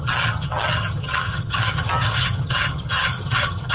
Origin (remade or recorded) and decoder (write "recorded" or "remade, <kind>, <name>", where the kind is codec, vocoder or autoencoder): remade, vocoder, HiFi-GAN